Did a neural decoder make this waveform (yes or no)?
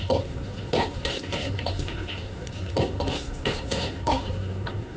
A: yes